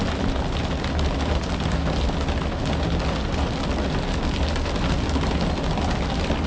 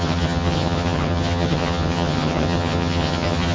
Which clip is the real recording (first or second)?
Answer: first